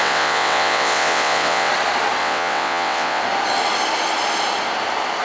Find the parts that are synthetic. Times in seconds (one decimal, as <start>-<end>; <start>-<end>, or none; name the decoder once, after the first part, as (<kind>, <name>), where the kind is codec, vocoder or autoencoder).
0.0-1.7 (vocoder, WaveNeXt); 2.2-3.2